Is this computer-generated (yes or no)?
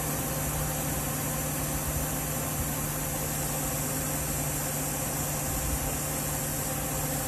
no